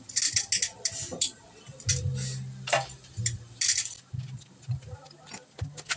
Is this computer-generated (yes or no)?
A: no